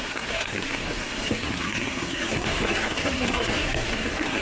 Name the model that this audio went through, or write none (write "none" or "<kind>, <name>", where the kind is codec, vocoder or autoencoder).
codec, SNAC